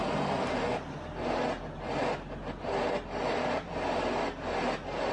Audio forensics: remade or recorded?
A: recorded